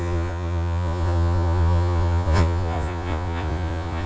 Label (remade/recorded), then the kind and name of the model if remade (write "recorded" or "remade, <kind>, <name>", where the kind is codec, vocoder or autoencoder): remade, vocoder, Vocos